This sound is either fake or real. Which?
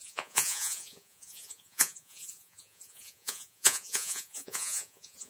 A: fake